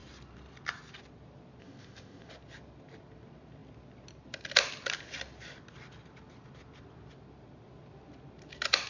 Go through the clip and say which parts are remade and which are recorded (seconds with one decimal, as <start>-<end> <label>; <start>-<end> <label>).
0.0-1.6 recorded; 1.6-2.3 remade; 2.3-8.9 recorded